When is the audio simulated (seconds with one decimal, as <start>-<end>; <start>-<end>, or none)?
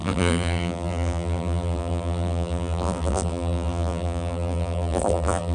0.0-5.5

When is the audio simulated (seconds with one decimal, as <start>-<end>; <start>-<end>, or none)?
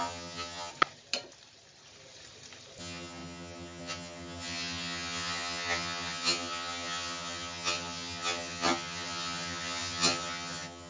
0.0-0.7; 2.8-10.9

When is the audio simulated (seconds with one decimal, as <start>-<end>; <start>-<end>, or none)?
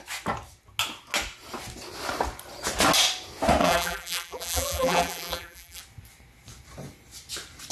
3.6-5.8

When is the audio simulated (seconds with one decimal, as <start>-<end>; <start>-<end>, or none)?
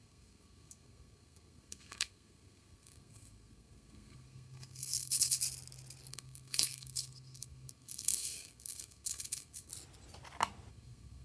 0.0-5.4; 6.1-9.7; 10.7-11.2